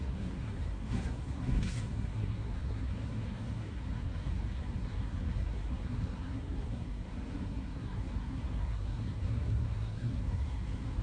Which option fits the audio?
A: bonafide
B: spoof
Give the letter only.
B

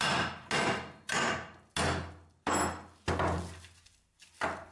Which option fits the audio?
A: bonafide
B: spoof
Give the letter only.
A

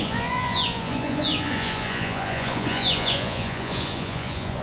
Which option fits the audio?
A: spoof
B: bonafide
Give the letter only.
A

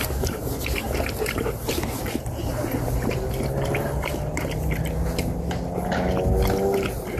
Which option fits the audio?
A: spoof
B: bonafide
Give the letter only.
B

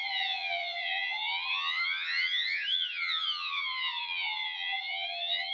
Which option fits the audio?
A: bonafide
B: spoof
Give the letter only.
B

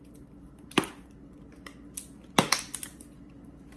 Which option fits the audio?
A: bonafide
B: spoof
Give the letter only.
A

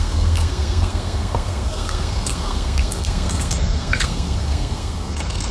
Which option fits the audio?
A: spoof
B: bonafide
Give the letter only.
A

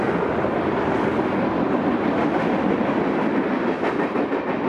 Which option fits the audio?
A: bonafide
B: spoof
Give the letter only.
B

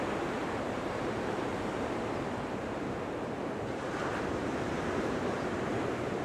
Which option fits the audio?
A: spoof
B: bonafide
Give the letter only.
A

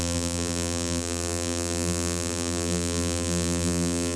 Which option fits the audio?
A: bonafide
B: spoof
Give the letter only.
B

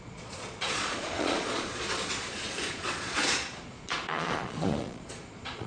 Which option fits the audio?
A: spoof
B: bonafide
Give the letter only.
A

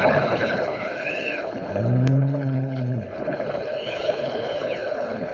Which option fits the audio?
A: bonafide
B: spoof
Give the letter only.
B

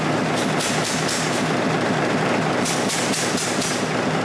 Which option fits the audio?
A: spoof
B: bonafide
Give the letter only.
A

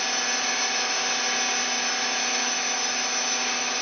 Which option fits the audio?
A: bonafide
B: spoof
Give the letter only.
A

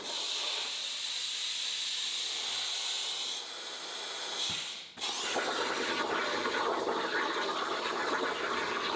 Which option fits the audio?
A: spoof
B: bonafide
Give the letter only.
B